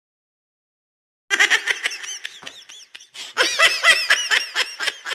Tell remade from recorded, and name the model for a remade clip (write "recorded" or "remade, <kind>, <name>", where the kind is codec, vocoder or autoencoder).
recorded